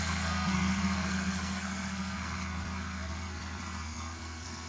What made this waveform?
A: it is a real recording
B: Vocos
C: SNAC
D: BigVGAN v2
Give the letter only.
C